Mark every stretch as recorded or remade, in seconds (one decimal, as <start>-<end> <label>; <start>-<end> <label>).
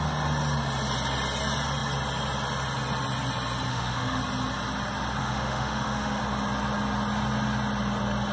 0.0-3.7 recorded; 3.7-4.2 remade; 4.2-5.2 recorded; 5.2-6.2 remade; 6.2-8.3 recorded